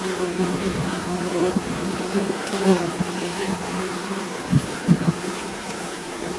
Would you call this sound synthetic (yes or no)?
yes